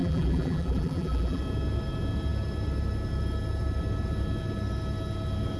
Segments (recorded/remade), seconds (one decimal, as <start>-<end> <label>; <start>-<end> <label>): 0.0-1.4 remade; 1.4-5.6 recorded